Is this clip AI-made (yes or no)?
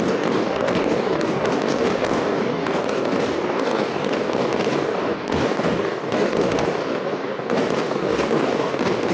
yes